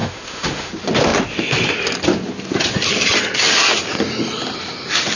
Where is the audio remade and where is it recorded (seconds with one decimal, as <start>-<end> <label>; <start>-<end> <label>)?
0.0-0.7 remade; 0.7-5.2 recorded